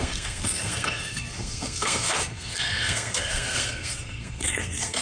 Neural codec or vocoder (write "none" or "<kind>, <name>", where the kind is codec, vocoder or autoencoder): codec, SNAC